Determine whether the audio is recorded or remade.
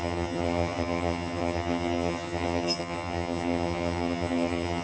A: remade